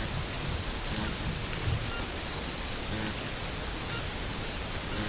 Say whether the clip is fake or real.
real